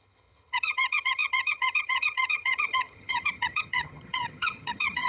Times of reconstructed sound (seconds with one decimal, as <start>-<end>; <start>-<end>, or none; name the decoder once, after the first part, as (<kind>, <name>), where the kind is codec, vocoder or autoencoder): 0.0-5.1 (vocoder, HiFi-GAN)